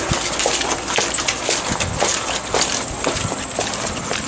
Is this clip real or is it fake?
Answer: real